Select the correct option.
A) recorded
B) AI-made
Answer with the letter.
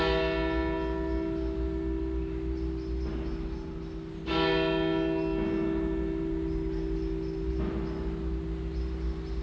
A